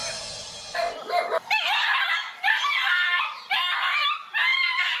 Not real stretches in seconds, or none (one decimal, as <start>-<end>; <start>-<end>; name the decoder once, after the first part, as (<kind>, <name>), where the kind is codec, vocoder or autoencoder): 2.5-3.2 (codec, SNAC)